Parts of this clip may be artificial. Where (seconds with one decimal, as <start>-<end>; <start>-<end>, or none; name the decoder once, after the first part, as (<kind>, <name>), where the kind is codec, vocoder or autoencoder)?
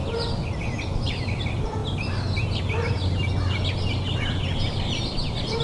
0.8-1.8 (vocoder, BigVGAN v2); 2.6-3.2; 4.7-5.6